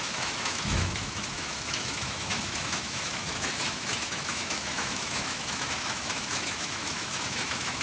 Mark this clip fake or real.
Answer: fake